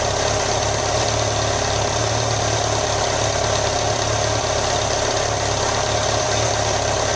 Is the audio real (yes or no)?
yes